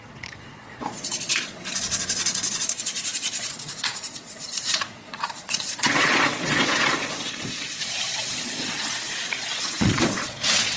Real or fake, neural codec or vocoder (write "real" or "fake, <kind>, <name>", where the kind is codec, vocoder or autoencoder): fake, vocoder, Vocos